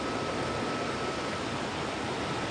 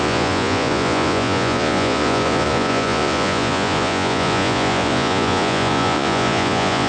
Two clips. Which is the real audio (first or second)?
first